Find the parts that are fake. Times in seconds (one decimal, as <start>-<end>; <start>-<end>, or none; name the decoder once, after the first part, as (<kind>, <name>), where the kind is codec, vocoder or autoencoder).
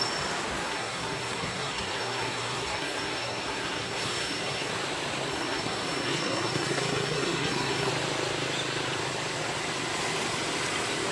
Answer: 0.6-4.7 (codec, SNAC); 5.3-7.9